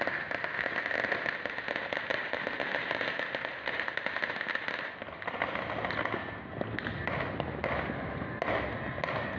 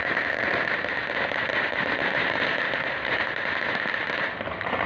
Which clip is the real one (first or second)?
first